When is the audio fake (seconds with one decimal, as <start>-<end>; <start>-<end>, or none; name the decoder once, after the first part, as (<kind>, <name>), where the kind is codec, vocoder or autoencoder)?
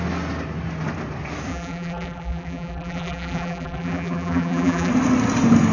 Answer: 1.5-4.9 (vocoder, BigVGAN v2)